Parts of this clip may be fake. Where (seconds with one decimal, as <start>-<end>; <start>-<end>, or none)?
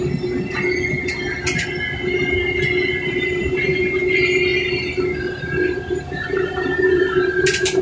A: 3.0-4.5; 6.0-7.8